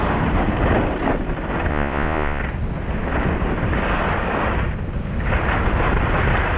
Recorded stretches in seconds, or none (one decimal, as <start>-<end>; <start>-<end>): 0.0-1.7; 2.4-6.6